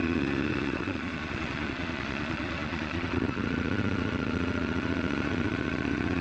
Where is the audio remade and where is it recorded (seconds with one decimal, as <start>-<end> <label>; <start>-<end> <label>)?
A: 0.0-6.2 remade